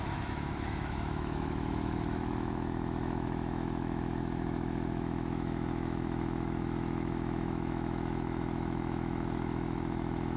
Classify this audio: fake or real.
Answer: fake